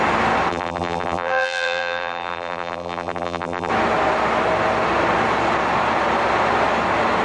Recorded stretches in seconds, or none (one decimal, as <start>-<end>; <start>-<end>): 0.0-0.5; 3.7-7.2